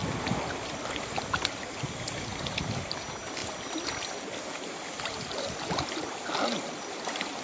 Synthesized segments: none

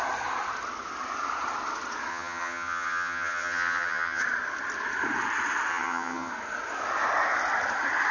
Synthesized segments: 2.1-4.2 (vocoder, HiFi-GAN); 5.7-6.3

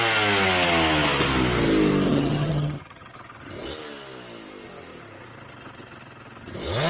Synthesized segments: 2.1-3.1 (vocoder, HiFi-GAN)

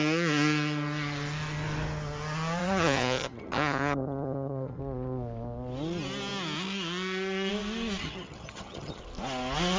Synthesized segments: 2.6-4.8 (vocoder, HiFi-GAN); 8.0-9.0

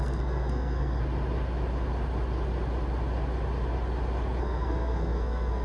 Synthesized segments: 0.0-1.0 (codec, SNAC); 4.4-5.6

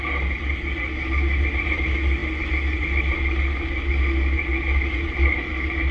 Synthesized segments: none

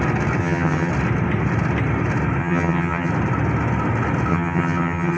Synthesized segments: 0.4-0.9 (vocoder, HiFi-GAN); 2.4-3.1; 4.3-5.2